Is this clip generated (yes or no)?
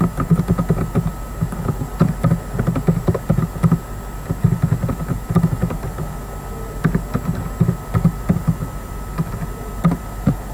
no